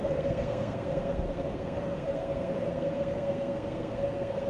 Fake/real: fake